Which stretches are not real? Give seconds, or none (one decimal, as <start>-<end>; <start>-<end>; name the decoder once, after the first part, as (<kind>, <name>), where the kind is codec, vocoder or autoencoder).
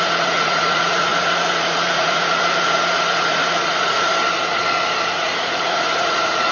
0.0-4.1 (vocoder, Vocos); 5.1-6.5